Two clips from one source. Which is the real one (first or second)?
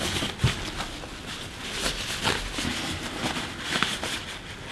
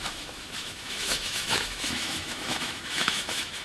first